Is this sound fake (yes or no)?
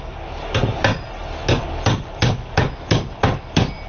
no